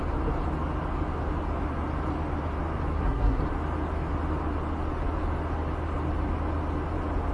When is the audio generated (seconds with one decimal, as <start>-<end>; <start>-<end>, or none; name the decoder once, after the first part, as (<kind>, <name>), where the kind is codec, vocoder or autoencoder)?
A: 2.9-3.4 (codec, SNAC)